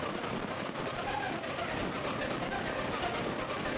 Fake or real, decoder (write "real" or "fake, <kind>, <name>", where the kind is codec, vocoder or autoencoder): real